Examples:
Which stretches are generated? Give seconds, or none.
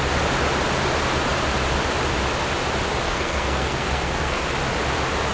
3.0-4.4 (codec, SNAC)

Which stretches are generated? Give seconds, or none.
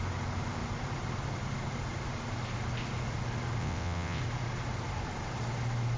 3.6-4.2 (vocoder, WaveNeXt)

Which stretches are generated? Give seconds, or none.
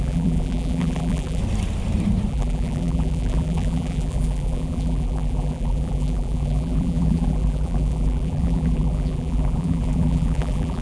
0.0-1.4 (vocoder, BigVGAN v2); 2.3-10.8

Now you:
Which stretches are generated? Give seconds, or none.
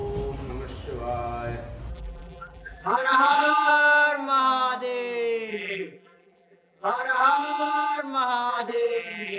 1.9-3.7 (vocoder, BigVGAN v2); 5.5-8.0; 8.5-9.4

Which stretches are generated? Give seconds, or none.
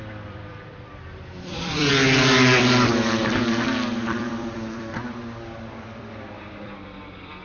0.0-7.4 (vocoder, BigVGAN v2)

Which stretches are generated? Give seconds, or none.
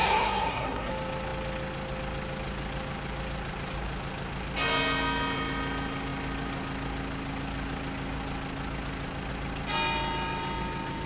0.0-0.9 (codec, SNAC)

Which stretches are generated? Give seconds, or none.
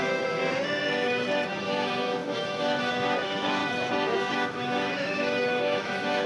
0.0-0.4 (autoencoder, DAC-VAE); 1.6-3.6; 4.3-6.3